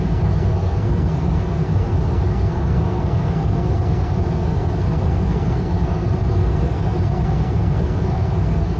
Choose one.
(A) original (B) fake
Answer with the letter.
B